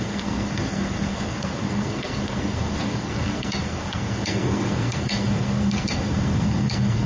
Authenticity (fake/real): fake